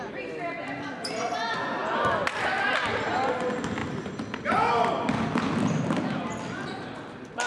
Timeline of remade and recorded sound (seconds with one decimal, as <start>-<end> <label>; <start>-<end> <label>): 0.0-3.8 recorded; 3.8-4.9 remade; 4.9-7.5 recorded